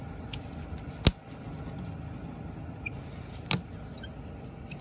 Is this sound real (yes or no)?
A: yes